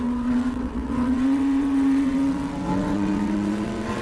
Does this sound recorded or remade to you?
remade